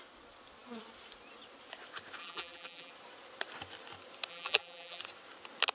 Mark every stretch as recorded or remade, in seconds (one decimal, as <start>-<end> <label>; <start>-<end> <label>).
0.0-2.2 recorded; 2.2-2.9 remade; 2.9-4.3 recorded; 4.3-5.0 remade; 5.0-5.7 recorded

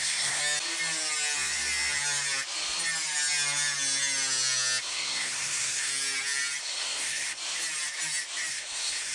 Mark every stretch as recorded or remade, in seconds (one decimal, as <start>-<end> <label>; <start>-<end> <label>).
0.0-0.4 remade; 0.4-4.8 recorded; 4.8-5.9 remade; 5.9-6.6 recorded; 6.6-7.4 remade; 7.4-8.5 recorded; 8.5-9.1 remade

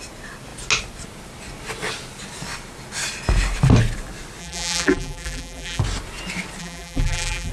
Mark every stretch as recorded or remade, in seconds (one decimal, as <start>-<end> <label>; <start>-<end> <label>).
0.0-4.4 recorded; 4.4-5.8 remade; 5.8-6.6 recorded; 6.6-7.5 remade

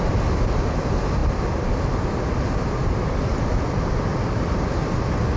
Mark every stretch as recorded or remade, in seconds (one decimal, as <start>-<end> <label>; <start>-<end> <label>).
0.0-2.8 recorded; 2.8-3.5 remade; 3.5-5.4 recorded

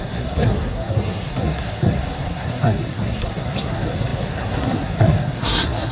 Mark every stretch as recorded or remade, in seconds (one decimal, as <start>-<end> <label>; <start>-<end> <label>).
0.0-5.9 remade

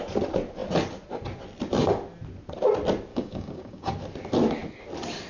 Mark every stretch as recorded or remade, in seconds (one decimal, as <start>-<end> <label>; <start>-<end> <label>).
0.0-3.1 recorded; 3.1-3.9 remade; 3.9-5.3 recorded

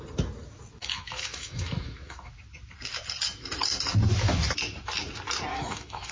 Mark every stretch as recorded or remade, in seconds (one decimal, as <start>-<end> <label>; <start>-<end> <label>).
0.0-0.8 recorded; 0.8-2.3 remade; 2.3-5.5 recorded; 5.5-6.1 remade